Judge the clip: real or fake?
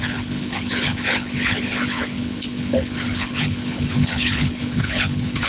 fake